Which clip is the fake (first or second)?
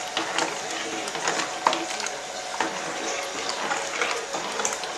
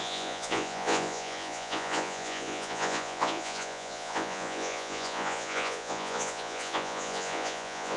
second